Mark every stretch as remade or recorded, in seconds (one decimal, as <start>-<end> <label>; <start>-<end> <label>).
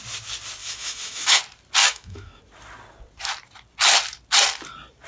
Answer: 0.0-0.6 recorded; 0.6-1.4 remade; 1.4-1.8 recorded; 1.8-2.4 remade; 2.4-5.1 recorded